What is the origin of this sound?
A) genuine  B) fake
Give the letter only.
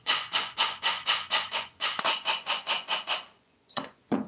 B